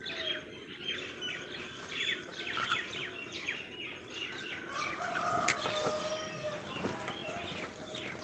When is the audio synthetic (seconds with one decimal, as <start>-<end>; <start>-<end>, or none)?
7.2-8.2